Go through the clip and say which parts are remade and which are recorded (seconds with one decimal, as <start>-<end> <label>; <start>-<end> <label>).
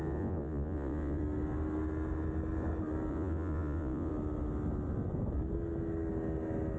0.0-1.2 remade; 1.2-3.1 recorded; 3.1-4.1 remade; 4.1-6.8 recorded